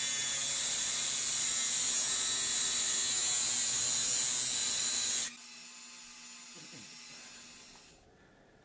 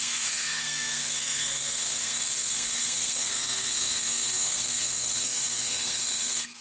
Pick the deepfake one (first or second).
second